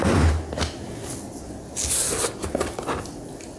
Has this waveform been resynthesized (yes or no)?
no